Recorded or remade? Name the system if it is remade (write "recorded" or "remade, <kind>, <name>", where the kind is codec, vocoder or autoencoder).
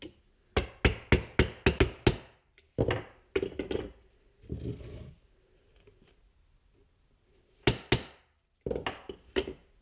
recorded